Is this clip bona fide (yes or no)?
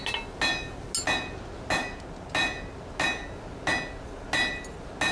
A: yes